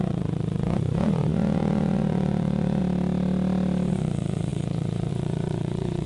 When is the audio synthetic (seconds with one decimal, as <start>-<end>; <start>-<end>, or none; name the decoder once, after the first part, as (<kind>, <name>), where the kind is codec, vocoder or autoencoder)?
0.0-2.8 (vocoder, Vocos); 3.9-6.1